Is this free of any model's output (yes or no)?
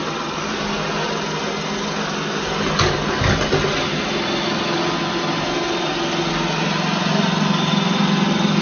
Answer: yes